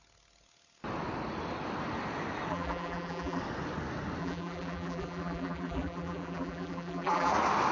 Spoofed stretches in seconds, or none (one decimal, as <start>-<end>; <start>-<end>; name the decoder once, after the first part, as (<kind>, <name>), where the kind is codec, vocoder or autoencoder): 2.5-3.4 (vocoder, BigVGAN v2); 4.2-7.3